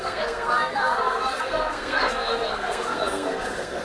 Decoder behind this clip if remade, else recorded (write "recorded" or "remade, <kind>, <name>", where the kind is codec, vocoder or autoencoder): remade, codec, SNAC